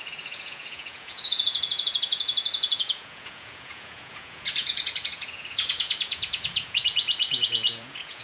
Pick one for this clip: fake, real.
fake